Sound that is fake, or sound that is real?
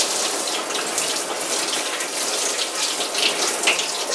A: real